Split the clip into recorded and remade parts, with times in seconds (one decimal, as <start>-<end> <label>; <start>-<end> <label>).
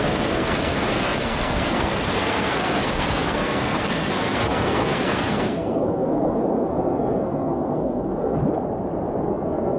0.0-8.4 remade; 8.4-9.3 recorded; 9.3-9.8 remade